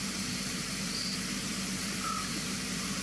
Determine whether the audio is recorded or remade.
remade